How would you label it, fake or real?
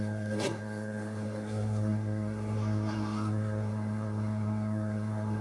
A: fake